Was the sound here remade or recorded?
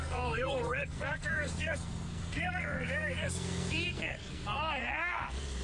remade